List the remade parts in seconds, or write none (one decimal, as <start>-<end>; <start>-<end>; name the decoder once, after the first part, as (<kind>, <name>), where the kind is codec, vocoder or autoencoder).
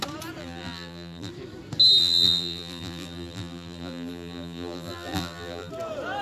0.4-1.3 (vocoder, BigVGAN v2); 2.0-5.7